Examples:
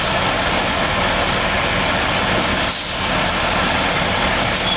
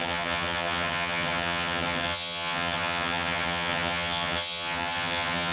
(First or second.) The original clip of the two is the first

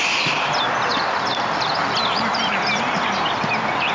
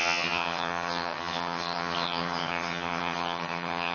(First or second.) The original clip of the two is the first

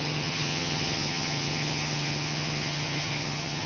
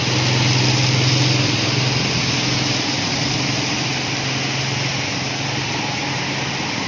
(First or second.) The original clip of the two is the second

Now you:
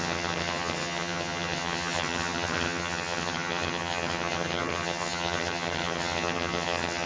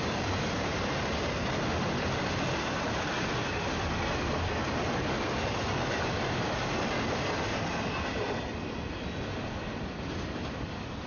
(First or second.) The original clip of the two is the second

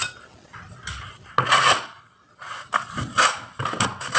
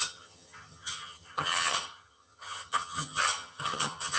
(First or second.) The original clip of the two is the first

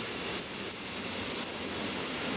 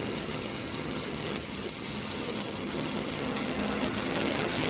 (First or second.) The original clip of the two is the first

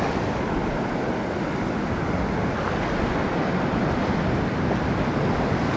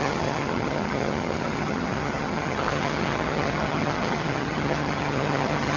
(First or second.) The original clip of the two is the first